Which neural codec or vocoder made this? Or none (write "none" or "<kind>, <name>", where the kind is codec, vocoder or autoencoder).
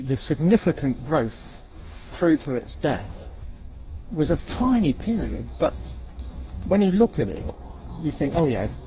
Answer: codec, DAC